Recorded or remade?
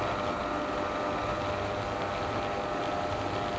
recorded